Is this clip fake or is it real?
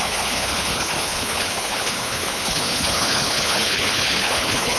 fake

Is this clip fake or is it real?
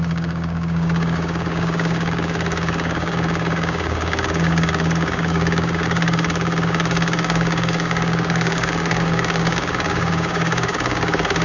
fake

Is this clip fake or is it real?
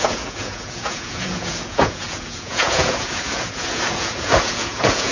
fake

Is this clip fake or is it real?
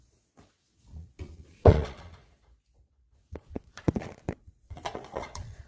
fake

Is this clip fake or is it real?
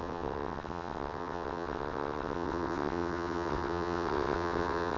fake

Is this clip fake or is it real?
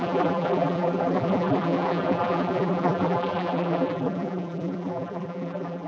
fake